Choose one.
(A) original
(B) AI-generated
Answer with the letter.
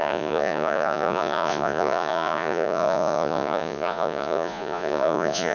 B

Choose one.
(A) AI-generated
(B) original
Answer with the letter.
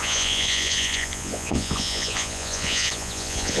A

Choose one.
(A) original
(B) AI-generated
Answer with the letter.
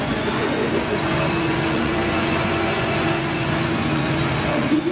B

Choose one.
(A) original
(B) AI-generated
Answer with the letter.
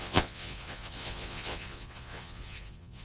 B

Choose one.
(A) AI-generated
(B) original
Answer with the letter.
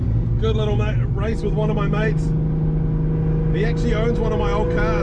B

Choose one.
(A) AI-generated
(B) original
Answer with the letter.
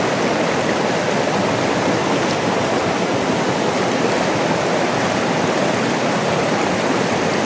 B